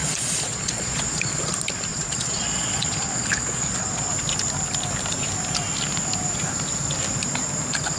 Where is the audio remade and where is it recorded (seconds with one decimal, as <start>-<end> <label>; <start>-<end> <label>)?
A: 0.0-1.5 remade; 1.5-1.9 recorded; 1.9-4.1 remade; 4.1-8.0 recorded